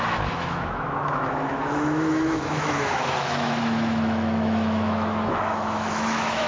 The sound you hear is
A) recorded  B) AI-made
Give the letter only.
B